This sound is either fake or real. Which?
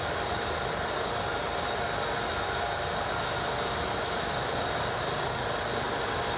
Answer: real